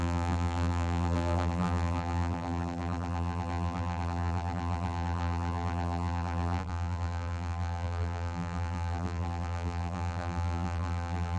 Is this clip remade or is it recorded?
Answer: remade